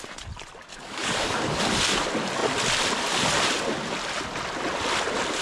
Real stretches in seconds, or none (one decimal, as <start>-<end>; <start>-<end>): 0.0-0.7; 1.6-5.4